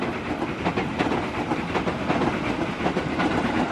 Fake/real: real